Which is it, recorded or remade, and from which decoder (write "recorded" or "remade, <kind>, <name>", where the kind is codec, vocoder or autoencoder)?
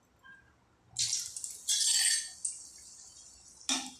recorded